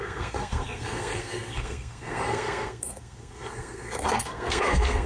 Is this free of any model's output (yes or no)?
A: no